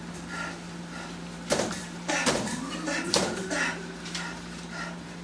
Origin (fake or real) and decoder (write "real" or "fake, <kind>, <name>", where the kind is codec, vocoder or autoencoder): fake, vocoder, BigVGAN v2